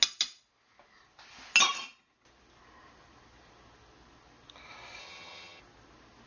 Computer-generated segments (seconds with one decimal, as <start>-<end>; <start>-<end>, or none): 5.0-5.6